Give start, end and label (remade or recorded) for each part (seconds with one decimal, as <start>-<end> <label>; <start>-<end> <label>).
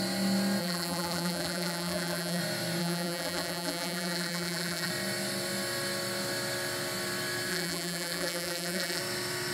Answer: 0.0-0.6 recorded; 0.6-2.4 remade; 2.4-2.8 recorded; 2.8-4.9 remade; 4.9-7.5 recorded; 7.5-9.0 remade; 9.0-9.5 recorded